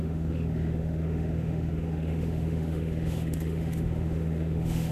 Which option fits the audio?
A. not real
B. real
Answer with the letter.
A